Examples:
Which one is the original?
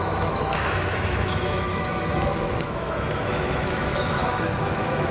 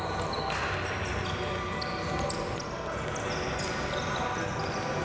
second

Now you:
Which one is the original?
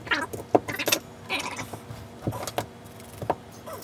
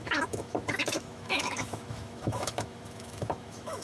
first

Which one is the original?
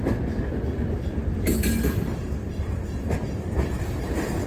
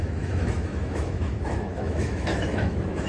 first